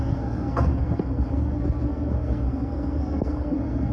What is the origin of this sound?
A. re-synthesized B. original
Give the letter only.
A